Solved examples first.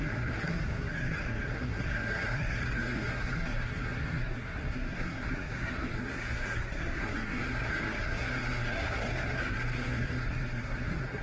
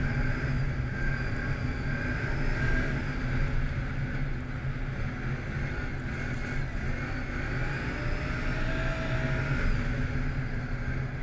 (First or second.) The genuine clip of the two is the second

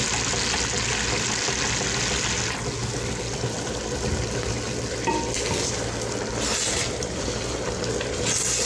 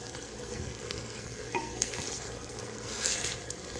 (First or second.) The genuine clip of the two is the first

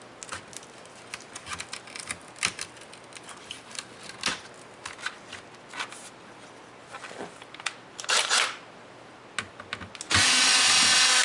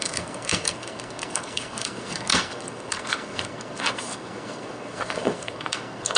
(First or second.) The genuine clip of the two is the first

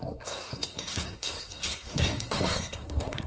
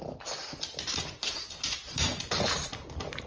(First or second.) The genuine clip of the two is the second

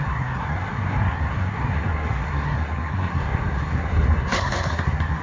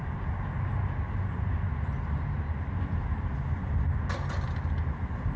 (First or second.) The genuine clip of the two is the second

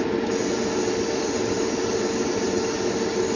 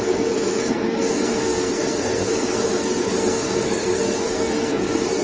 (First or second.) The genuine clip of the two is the first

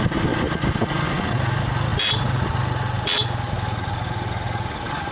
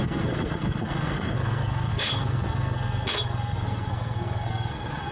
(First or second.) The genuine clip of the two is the first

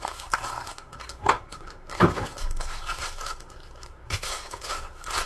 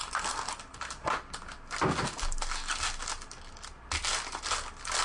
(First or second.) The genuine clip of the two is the second